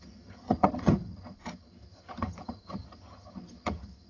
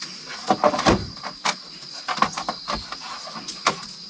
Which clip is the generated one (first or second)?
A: first